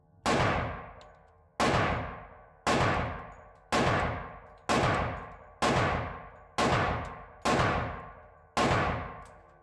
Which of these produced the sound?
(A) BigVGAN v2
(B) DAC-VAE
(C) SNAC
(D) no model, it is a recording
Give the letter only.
D